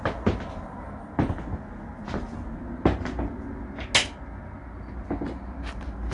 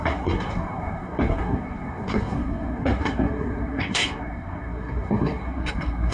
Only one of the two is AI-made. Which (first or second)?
second